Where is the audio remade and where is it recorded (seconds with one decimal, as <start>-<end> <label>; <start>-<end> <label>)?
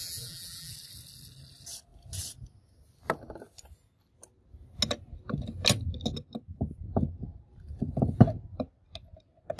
0.0-0.7 remade; 0.7-9.6 recorded